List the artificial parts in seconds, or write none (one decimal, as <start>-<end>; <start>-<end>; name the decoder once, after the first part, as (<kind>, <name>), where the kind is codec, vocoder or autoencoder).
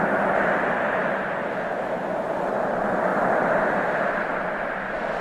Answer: 3.1-3.7 (vocoder, BigVGAN v2); 4.3-5.2